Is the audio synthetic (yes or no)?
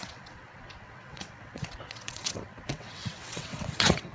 yes